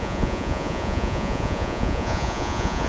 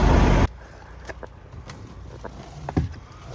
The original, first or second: second